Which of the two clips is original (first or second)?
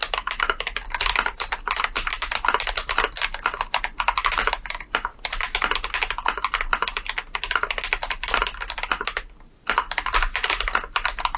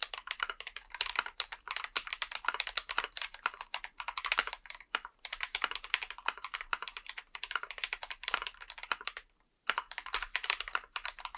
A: first